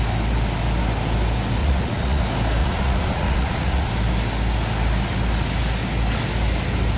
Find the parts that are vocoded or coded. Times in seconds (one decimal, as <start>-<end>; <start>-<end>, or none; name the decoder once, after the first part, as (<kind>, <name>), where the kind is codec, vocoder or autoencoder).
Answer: 1.6-2.2 (vocoder, Vocos); 2.6-3.9